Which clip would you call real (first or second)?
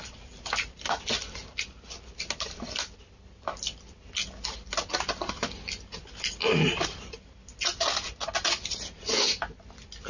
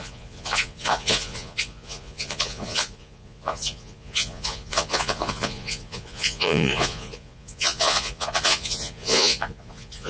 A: first